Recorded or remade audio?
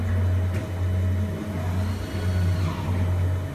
recorded